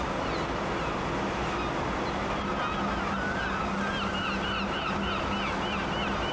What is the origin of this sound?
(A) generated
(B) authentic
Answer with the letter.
B